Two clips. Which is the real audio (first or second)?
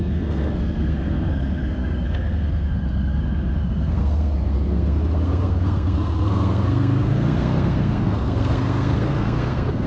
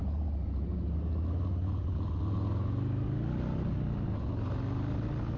second